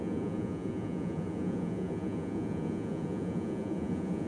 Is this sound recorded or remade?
remade